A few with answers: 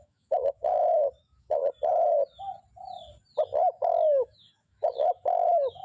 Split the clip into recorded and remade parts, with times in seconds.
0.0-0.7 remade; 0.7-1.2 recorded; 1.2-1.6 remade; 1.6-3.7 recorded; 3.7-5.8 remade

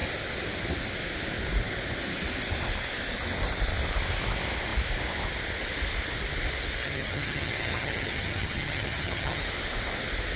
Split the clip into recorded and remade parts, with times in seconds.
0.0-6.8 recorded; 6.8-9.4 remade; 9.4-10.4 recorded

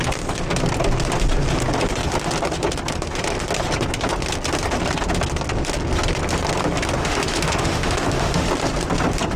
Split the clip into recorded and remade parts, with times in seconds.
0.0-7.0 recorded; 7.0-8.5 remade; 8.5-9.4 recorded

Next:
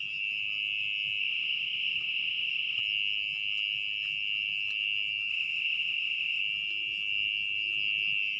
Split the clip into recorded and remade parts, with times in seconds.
0.0-1.2 recorded; 1.2-2.8 remade; 2.8-5.3 recorded; 5.3-6.4 remade; 6.4-8.4 recorded

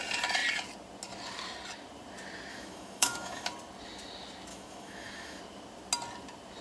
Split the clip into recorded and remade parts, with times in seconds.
0.0-2.5 recorded; 2.5-3.5 remade; 3.5-4.5 recorded; 4.5-5.4 remade; 5.4-6.6 recorded

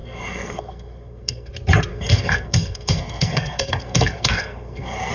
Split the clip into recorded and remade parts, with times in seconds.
0.0-1.5 remade; 1.5-1.9 recorded; 1.9-5.1 remade